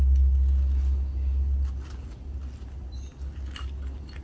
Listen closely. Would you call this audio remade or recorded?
recorded